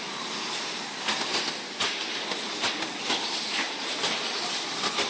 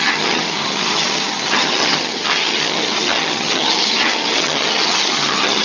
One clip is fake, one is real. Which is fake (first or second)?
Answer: second